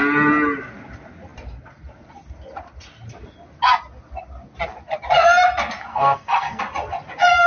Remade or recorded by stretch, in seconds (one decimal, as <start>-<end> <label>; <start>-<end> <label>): 0.0-5.9 recorded; 5.9-6.6 remade; 6.6-7.5 recorded